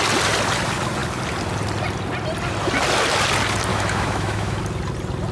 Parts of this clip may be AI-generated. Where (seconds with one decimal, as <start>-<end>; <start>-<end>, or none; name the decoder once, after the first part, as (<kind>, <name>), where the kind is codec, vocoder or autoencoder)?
3.7-4.6 (autoencoder, DAC-VAE)